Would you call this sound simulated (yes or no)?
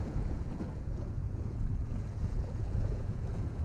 yes